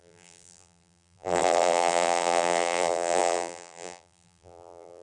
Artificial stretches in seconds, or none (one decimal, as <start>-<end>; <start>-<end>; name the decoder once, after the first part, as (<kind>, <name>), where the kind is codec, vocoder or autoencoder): 0.0-5.0 (vocoder, BigVGAN v2)